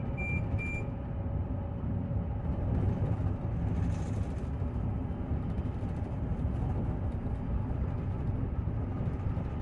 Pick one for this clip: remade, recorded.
recorded